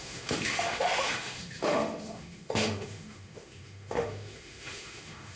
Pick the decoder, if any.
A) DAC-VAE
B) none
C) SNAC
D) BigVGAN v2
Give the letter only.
A